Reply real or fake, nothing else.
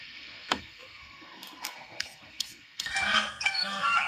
fake